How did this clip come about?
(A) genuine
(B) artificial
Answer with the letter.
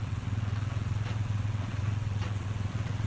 B